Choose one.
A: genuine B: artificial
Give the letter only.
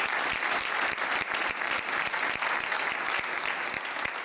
A